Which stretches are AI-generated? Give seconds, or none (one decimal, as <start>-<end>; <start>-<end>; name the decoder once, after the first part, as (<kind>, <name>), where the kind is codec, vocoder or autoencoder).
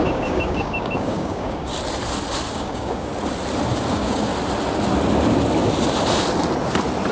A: 0.0-1.7 (codec, DAC); 2.5-3.1; 3.9-4.3